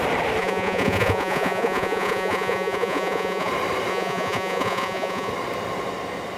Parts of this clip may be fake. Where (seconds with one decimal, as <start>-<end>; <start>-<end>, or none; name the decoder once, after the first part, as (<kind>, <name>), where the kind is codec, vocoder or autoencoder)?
0.4-3.5 (vocoder, Vocos); 3.9-5.3